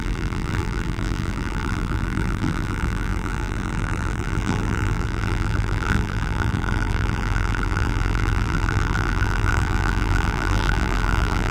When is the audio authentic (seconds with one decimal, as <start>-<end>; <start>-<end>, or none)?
none